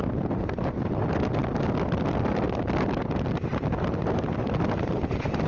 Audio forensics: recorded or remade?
recorded